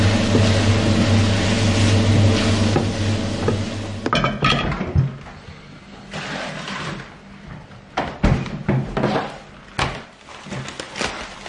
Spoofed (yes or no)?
no